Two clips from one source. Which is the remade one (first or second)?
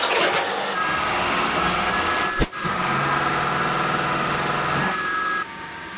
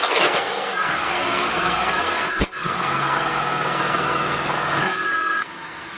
second